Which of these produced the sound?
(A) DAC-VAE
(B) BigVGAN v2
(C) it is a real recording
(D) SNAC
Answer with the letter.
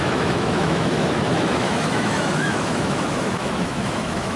A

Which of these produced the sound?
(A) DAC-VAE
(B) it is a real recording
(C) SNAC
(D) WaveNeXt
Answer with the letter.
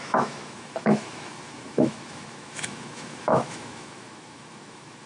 A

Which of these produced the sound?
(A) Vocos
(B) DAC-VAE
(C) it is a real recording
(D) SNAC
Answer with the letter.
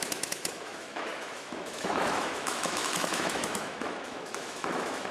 B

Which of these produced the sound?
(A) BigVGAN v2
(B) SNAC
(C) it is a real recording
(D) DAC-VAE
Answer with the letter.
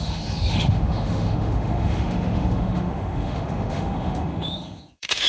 D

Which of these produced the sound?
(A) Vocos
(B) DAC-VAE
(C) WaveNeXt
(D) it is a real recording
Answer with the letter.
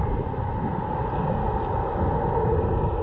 D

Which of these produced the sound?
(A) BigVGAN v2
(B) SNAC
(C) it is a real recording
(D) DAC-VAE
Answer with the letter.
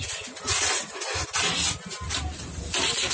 C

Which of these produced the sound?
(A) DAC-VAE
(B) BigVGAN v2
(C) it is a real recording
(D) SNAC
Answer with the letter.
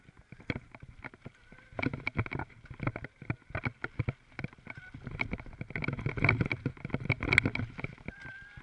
C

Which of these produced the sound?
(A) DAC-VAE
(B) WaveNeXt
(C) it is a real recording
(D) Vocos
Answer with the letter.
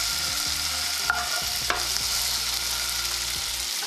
C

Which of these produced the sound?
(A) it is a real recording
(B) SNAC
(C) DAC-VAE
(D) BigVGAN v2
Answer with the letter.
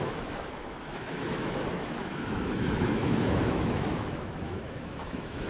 C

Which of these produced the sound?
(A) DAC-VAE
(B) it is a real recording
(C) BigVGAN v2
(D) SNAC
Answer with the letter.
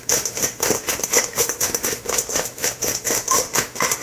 A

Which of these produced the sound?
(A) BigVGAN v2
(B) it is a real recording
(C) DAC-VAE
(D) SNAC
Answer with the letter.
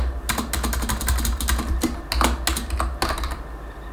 B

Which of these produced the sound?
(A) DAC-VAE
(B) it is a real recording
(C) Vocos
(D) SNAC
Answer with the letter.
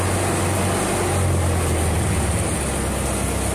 B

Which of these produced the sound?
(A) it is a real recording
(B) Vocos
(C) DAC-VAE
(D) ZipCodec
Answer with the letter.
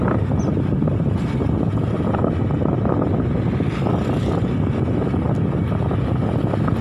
A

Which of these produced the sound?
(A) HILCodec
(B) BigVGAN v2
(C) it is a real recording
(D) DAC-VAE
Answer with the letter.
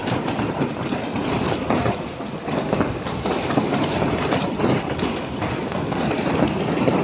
C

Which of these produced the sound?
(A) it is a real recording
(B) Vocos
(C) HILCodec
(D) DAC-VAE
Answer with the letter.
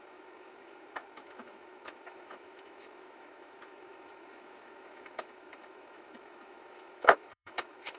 D